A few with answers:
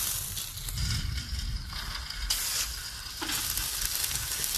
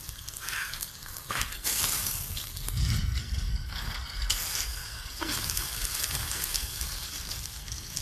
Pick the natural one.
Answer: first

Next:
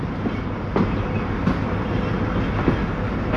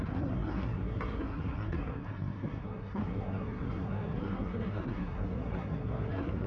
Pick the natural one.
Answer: first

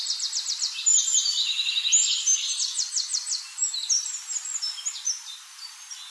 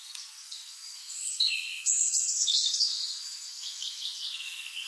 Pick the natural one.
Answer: first